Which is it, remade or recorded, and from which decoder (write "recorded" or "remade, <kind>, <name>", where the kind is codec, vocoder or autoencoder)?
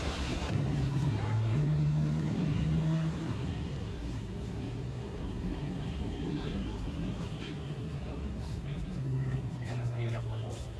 remade, codec, SNAC